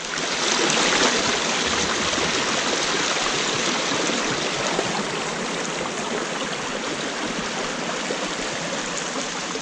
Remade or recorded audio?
recorded